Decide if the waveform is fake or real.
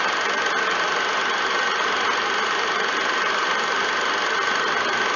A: real